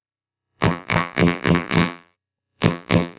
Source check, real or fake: fake